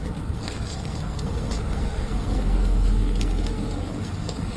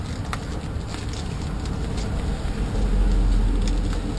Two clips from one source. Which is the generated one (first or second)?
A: first